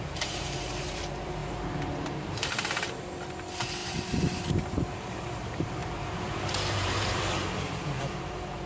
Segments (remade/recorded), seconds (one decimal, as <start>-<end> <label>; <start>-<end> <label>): 0.0-8.7 remade